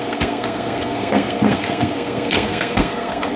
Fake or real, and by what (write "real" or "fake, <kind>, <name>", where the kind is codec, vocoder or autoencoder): fake, codec, SNAC